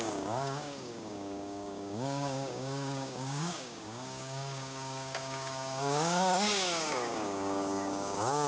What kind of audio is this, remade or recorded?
remade